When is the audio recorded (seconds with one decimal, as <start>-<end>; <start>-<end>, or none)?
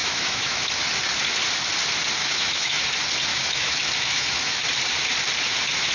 0.7-2.2; 2.8-3.3; 4.6-5.9